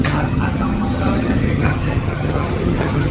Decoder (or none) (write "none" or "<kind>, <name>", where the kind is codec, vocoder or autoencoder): vocoder, HiFi-GAN